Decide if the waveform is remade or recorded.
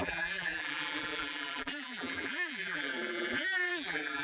remade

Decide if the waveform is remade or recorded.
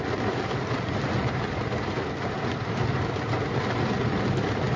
recorded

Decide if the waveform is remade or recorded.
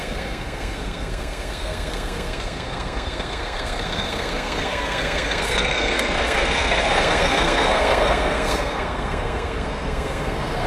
remade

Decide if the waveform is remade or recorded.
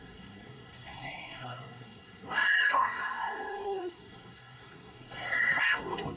remade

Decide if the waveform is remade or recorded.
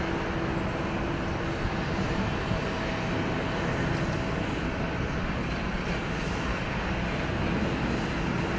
recorded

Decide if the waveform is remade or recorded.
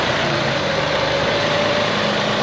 remade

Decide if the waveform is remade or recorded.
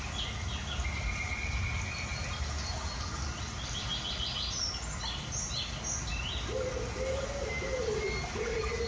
recorded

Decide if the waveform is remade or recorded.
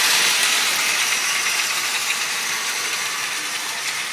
remade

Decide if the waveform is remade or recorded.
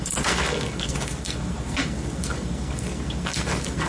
remade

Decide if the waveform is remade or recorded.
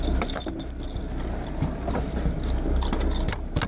recorded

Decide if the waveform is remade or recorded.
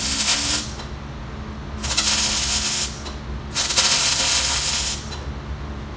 recorded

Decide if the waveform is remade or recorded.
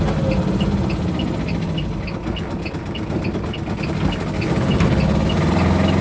recorded